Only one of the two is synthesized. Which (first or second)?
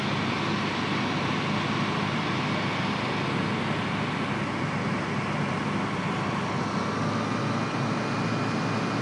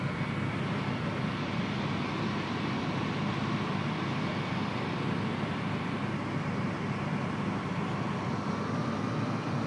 second